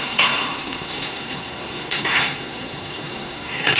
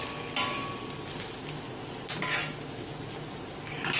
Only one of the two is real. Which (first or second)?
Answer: second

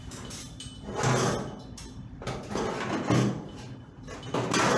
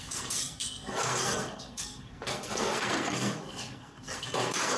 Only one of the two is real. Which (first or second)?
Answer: first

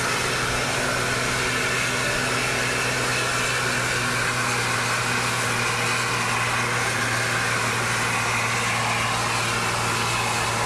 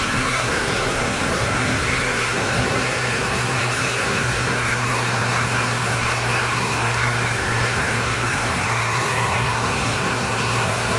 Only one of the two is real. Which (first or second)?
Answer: first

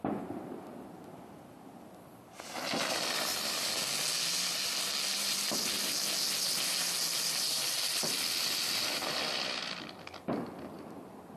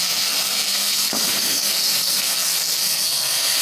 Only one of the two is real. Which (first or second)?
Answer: first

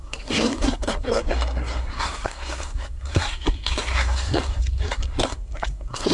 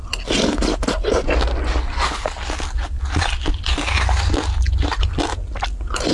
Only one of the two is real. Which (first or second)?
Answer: second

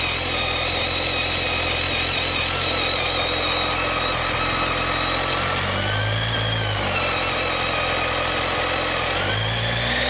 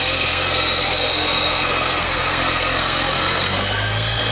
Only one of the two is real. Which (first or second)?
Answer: first